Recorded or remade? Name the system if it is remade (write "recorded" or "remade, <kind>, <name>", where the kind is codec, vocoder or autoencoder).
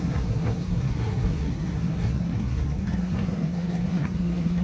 remade, codec, SNAC